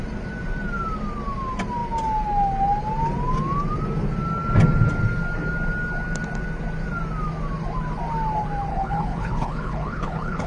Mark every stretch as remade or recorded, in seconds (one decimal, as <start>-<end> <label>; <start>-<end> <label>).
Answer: 0.0-8.7 recorded; 8.7-10.5 remade